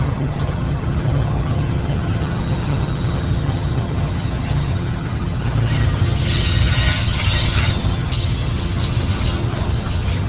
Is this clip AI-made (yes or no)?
yes